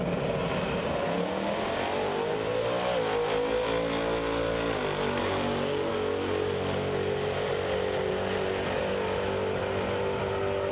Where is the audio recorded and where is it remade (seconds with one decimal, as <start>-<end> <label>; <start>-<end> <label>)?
0.0-5.2 recorded; 5.2-5.9 remade; 5.9-10.7 recorded